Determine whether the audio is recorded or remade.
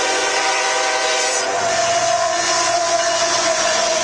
remade